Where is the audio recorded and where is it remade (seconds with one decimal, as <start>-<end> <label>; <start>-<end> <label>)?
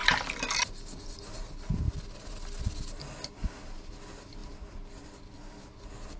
0.0-6.2 recorded